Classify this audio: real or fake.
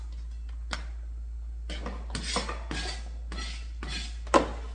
real